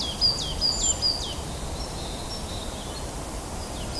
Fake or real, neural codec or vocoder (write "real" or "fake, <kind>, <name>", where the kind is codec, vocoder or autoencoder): real